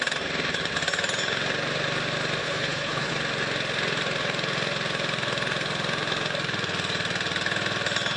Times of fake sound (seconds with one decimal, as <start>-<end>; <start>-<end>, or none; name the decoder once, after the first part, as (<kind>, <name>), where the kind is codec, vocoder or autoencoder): 2.4-3.1 (codec, HILCodec)